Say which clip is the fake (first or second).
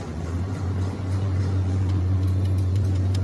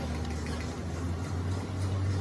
first